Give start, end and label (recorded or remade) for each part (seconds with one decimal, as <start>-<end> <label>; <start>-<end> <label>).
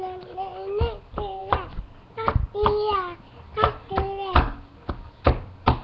0.0-5.8 recorded